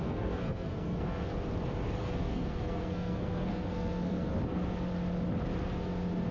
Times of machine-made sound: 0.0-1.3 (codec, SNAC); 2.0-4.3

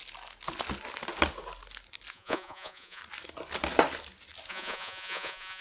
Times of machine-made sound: 2.1-3.0 (vocoder, Vocos); 4.5-5.6

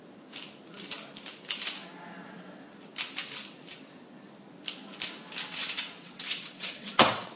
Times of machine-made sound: 5.5-7.4 (vocoder, WaveNeXt)

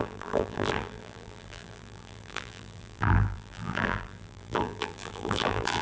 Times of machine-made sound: 0.0-5.8 (vocoder, BigVGAN v2)